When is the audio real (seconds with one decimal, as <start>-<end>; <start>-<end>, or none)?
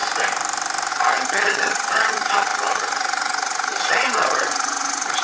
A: 0.0-0.9